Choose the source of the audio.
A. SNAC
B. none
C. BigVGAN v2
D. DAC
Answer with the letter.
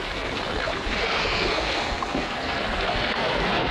A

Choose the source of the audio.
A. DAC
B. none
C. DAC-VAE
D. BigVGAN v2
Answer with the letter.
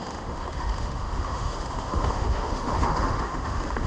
C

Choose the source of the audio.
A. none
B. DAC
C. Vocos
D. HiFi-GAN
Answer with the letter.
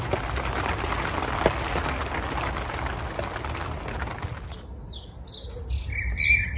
A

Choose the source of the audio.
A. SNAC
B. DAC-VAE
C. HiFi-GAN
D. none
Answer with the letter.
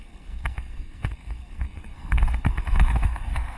A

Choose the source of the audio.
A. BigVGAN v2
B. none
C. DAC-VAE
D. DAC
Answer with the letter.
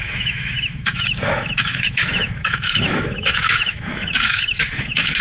C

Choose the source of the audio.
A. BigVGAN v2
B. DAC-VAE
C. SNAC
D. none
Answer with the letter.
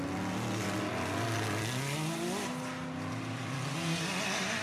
D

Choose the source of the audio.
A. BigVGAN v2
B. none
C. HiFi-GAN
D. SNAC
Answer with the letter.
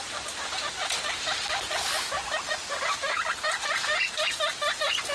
B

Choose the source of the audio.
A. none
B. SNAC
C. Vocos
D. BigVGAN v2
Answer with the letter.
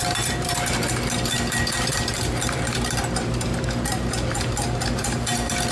D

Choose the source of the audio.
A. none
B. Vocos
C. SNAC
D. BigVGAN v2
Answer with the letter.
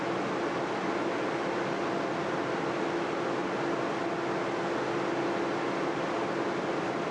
A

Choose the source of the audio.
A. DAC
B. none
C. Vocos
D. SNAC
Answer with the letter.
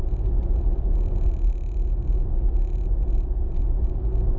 B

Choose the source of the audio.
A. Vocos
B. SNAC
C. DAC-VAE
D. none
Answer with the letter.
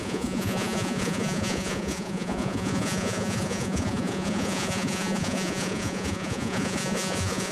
A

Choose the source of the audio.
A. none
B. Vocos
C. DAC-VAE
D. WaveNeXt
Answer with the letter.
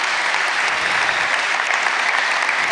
A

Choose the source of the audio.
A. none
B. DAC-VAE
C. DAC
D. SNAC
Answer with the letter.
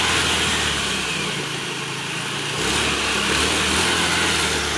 A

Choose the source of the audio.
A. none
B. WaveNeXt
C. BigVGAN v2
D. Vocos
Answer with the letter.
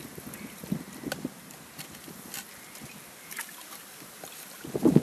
A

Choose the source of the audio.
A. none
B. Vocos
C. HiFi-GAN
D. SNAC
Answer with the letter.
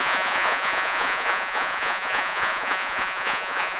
B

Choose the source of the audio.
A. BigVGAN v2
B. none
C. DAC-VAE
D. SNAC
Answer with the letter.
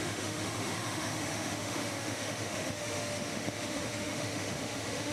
C